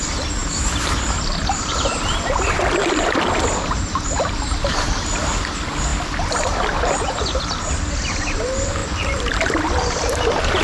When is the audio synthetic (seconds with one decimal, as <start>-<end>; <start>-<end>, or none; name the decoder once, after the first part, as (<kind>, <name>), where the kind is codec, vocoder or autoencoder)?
5.9-7.7 (vocoder, BigVGAN v2); 8.8-10.0

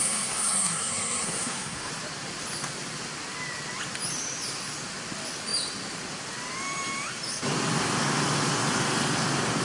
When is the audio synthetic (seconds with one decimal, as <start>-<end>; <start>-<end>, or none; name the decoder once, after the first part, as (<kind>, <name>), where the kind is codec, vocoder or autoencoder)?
0.0-1.9 (codec, SNAC)

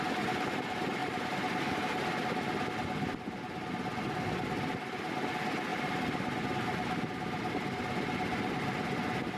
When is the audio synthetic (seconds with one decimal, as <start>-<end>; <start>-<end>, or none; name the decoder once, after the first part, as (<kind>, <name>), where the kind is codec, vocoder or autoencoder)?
1.0-1.7 (vocoder, BigVGAN v2); 5.7-7.5

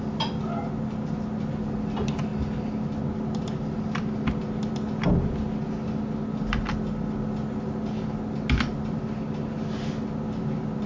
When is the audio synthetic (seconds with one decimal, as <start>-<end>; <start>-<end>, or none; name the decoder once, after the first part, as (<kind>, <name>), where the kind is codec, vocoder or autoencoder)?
none

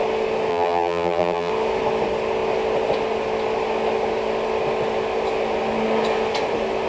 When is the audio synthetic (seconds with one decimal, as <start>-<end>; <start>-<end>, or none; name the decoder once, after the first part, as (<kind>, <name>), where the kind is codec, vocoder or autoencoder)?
0.5-1.5 (vocoder, BigVGAN v2)

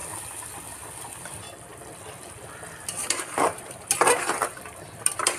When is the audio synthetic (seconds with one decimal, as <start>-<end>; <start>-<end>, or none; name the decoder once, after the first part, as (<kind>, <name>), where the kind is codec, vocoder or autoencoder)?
0.6-5.4 (vocoder, BigVGAN v2)